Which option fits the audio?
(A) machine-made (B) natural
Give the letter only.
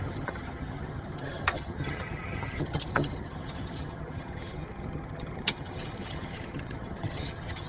A